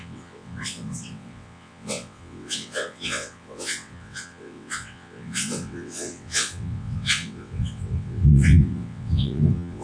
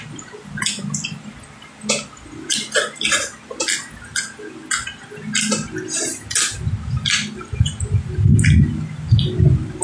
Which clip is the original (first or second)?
second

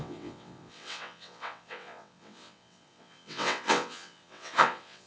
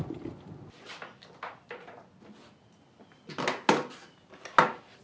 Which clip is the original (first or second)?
second